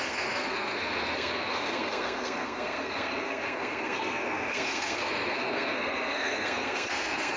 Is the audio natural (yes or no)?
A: no